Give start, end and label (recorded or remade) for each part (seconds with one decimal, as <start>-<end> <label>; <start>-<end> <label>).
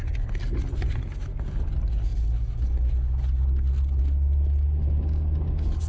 0.0-5.9 recorded